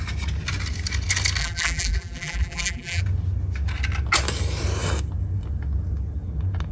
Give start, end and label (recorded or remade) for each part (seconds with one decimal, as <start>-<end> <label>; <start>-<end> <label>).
0.0-1.4 recorded; 1.4-3.0 remade; 3.0-6.7 recorded